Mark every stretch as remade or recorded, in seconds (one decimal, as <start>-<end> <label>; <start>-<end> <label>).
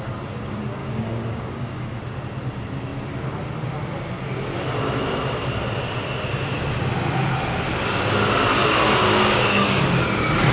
0.0-0.8 recorded; 0.8-2.0 remade; 2.0-9.0 recorded; 9.0-9.8 remade; 9.8-10.5 recorded